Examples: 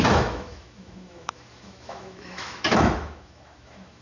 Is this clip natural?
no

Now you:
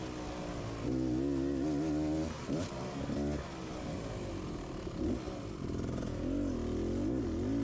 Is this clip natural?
yes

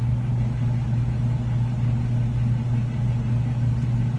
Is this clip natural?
yes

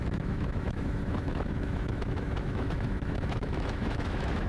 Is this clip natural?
no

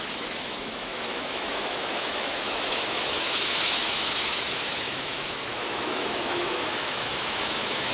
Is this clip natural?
no